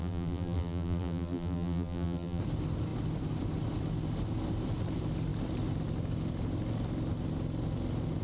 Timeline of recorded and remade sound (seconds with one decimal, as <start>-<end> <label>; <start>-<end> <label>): 0.0-2.4 remade; 2.4-8.2 recorded